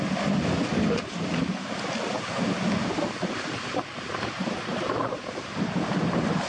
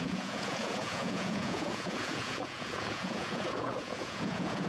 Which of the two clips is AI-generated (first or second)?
second